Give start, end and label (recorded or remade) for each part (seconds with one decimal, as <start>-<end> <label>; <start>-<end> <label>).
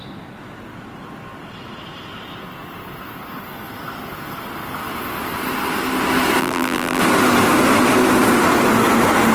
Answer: 0.0-6.4 recorded; 6.4-7.0 remade; 7.0-9.3 recorded